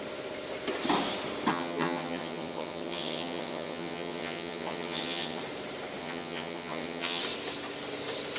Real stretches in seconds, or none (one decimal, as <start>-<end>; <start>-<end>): 0.0-1.5; 5.4-6.0; 7.2-8.4